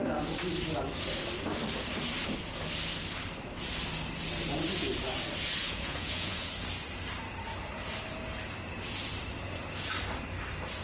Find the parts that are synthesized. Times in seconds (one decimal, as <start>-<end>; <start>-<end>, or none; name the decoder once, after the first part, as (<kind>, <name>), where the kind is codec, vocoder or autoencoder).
5.6-6.5 (vocoder, Vocos)